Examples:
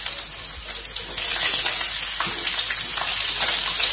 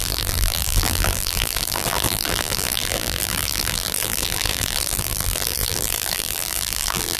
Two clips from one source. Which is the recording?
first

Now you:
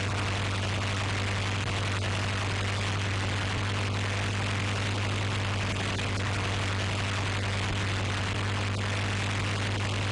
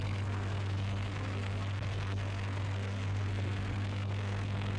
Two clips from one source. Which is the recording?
first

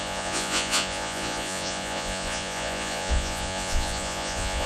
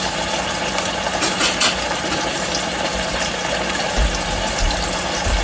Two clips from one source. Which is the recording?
second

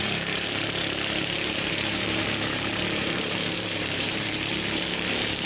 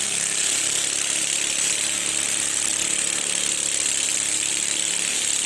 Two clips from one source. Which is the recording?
second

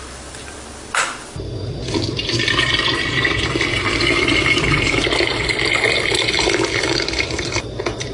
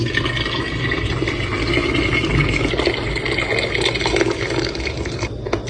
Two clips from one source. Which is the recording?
second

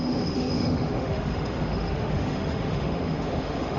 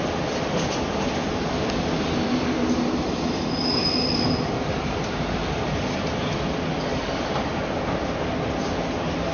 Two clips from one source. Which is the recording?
second